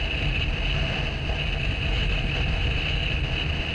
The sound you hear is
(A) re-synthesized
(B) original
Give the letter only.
B